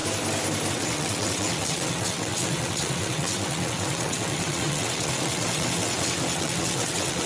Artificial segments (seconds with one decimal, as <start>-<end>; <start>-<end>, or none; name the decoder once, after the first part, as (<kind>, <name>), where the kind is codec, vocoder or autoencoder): 0.7-7.3 (vocoder, WaveNeXt)